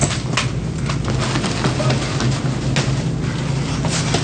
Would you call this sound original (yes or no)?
yes